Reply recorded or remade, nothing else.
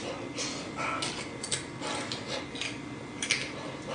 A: recorded